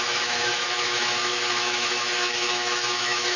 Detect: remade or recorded remade